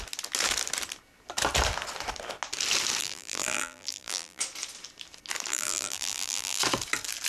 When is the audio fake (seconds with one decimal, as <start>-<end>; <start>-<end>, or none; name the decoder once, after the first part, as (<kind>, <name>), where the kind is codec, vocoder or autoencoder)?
3.0-4.4 (vocoder, BigVGAN v2); 5.5-6.6